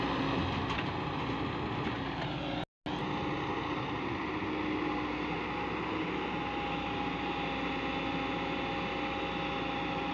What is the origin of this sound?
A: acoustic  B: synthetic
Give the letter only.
A